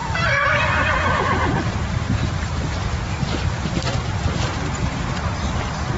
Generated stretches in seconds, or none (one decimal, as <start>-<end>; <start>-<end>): 0.0-3.6; 4.5-5.3